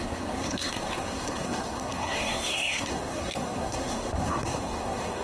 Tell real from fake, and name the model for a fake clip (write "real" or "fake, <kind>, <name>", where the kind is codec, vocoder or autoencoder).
fake, codec, SNAC